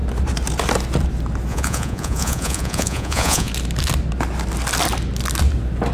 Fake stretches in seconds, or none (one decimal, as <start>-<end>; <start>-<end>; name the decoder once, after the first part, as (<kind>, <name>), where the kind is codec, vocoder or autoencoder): 1.5-3.5 (vocoder, Vocos)